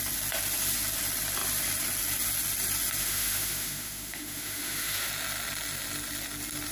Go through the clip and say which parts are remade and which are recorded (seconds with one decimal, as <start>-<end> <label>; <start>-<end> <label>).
0.0-3.0 recorded; 3.0-5.1 remade; 5.1-6.7 recorded